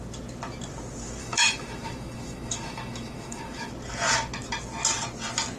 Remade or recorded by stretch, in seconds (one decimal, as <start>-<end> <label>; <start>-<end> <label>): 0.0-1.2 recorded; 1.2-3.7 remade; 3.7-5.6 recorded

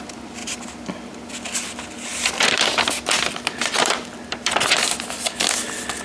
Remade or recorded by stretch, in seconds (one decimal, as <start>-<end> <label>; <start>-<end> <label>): 0.0-0.4 recorded; 0.4-1.3 remade; 1.3-2.1 recorded; 2.1-5.1 remade; 5.1-6.0 recorded

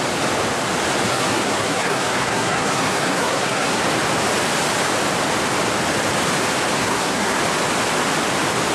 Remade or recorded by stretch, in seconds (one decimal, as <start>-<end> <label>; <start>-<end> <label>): 0.0-1.1 recorded; 1.1-3.8 remade; 3.8-6.8 recorded; 6.8-7.4 remade; 7.4-8.7 recorded

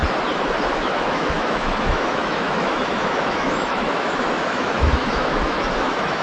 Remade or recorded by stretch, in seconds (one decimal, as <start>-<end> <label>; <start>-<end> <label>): 0.0-0.7 recorded; 0.7-6.2 remade

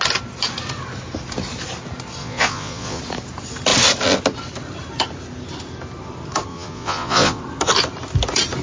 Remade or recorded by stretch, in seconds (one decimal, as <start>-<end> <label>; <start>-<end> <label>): 0.0-2.2 recorded; 2.2-3.0 remade; 3.0-6.5 recorded; 6.5-7.4 remade; 7.4-8.6 recorded

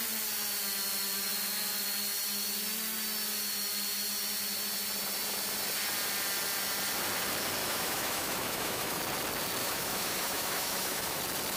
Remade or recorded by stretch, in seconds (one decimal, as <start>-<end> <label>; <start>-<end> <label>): 0.0-7.6 recorded; 7.6-9.0 remade; 9.0-9.6 recorded; 9.6-11.2 remade; 11.2-11.6 recorded

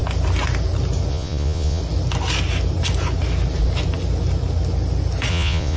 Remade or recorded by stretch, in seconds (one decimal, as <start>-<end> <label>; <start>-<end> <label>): 0.0-1.1 recorded; 1.1-1.8 remade; 1.8-5.3 recorded; 5.3-5.8 remade

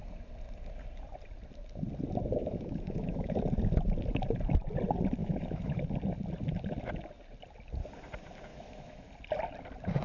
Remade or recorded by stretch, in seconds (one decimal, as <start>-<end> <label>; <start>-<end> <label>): 0.0-2.4 recorded; 2.4-3.4 remade; 3.4-5.2 recorded; 5.2-5.8 remade; 5.8-8.5 recorded; 8.5-9.1 remade; 9.1-10.0 recorded